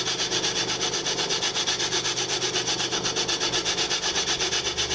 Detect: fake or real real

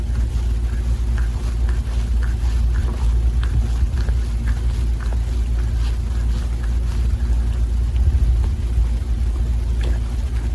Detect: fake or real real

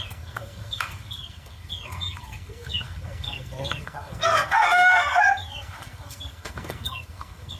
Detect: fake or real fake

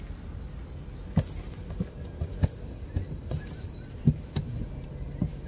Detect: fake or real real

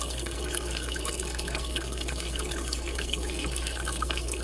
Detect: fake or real fake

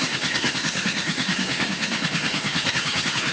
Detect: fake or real fake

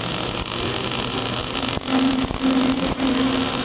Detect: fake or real real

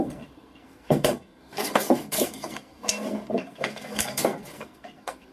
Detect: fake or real fake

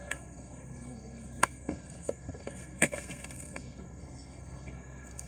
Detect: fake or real fake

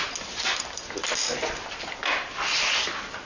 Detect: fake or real real